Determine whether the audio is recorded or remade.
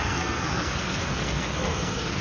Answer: remade